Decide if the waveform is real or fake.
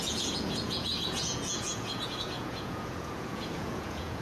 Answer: fake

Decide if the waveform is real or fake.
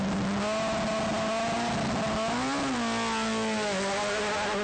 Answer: real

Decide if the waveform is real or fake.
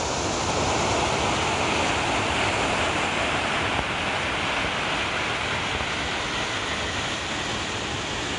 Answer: real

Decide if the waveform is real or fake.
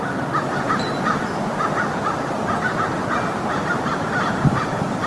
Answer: real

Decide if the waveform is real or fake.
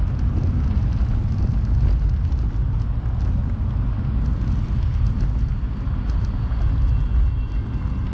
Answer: real